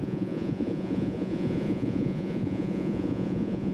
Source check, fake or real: fake